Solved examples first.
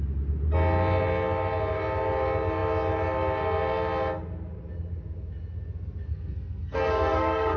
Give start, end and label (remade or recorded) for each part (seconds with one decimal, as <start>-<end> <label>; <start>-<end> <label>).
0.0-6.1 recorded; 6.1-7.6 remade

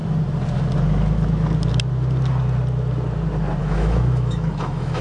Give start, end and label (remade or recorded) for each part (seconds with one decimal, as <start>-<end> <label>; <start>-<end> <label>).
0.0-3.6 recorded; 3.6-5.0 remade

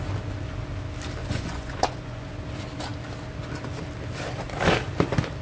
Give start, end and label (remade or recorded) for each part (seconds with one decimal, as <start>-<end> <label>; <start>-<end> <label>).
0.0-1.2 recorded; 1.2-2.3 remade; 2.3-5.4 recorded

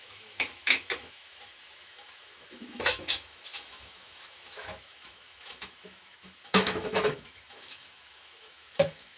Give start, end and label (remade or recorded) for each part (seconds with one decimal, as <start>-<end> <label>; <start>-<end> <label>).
0.0-9.2 remade